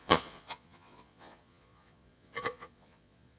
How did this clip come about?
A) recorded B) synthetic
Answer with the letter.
B